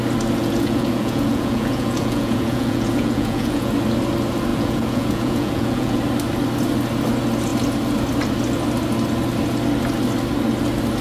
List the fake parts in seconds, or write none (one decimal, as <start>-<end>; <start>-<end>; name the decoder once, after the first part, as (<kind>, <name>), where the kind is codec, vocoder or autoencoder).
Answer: 0.4-3.7 (vocoder, Vocos); 4.5-6.0